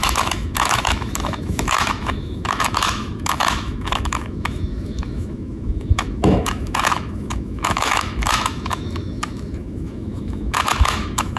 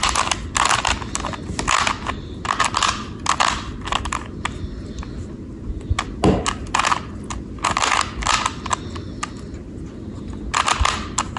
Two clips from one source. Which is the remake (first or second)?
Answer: first